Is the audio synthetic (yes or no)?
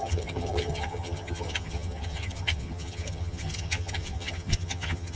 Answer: yes